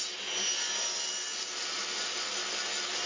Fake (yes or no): no